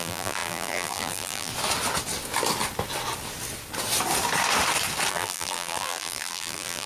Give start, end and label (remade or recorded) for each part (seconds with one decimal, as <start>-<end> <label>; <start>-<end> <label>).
0.0-1.5 remade; 1.5-5.1 recorded; 5.1-6.9 remade